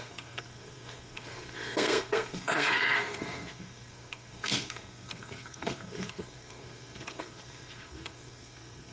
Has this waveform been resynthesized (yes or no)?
yes